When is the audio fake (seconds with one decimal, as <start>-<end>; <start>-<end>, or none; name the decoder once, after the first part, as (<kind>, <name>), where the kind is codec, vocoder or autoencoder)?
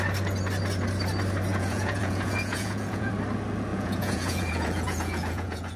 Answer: 1.5-3.1 (vocoder, Vocos); 3.7-5.8